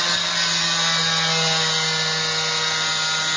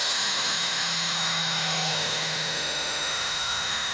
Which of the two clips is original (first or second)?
first